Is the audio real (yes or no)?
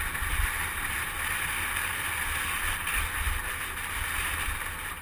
yes